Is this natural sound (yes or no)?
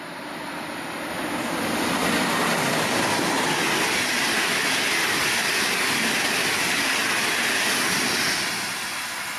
yes